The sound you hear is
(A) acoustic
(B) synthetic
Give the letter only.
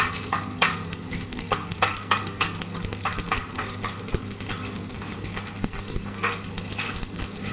B